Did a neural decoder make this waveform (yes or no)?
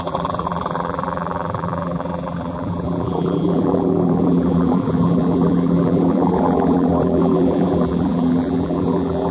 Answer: yes